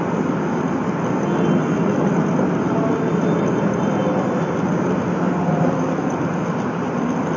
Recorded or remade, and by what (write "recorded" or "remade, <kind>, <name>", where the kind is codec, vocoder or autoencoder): recorded